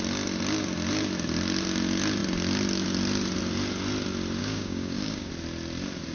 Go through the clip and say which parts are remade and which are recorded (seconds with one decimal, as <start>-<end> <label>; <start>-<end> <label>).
0.0-4.4 recorded; 4.4-5.3 remade; 5.3-6.1 recorded